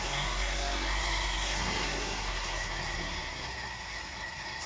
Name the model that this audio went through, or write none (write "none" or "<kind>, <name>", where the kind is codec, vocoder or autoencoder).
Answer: codec, SNAC